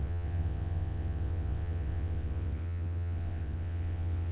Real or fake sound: fake